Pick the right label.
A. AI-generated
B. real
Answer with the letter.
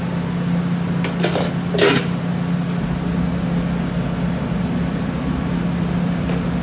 B